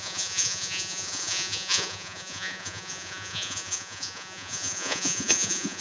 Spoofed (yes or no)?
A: yes